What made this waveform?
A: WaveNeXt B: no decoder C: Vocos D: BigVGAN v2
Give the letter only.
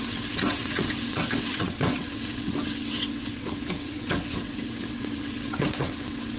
A